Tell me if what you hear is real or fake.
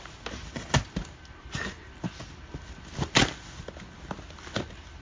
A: real